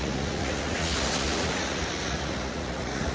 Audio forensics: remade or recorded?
remade